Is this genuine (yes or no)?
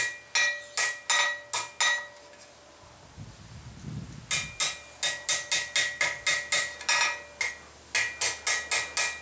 yes